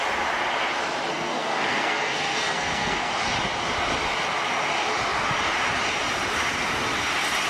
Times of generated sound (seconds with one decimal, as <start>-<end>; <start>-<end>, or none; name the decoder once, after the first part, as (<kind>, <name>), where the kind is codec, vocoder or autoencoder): 1.1-3.1 (codec, SNAC)